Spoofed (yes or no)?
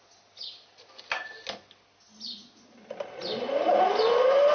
no